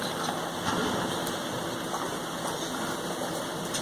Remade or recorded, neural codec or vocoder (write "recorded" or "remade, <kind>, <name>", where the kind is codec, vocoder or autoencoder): recorded